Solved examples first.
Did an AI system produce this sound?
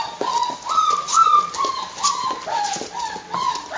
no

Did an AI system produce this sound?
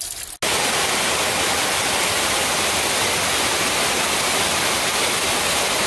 no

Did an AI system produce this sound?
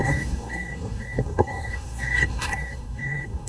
yes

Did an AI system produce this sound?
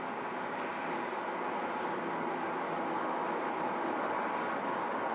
no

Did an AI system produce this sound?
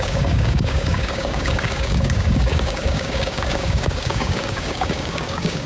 yes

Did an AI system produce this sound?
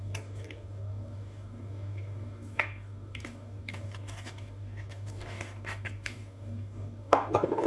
yes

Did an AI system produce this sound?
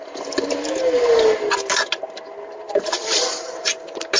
no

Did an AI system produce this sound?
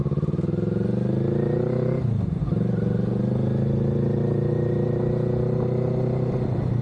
no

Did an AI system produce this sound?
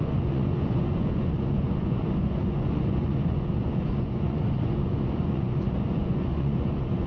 yes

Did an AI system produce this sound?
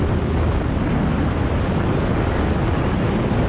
no